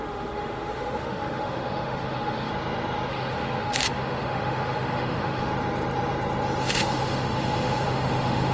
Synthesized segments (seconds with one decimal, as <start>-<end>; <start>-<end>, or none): 0.0-2.5; 3.1-5.5; 6.6-8.5